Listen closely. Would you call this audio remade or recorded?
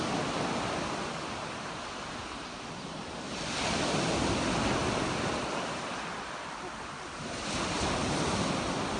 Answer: recorded